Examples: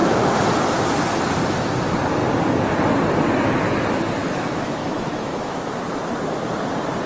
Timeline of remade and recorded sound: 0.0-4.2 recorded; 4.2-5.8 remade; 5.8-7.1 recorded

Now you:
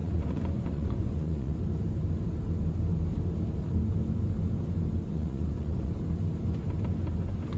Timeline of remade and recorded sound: 0.0-1.6 remade; 1.6-5.1 recorded; 5.1-6.0 remade; 6.0-7.6 recorded

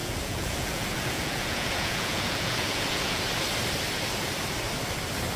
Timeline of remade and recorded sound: 0.0-3.2 remade; 3.2-5.4 recorded

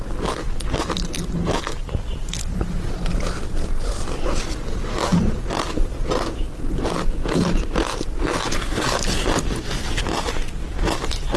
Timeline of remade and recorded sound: 0.0-11.4 recorded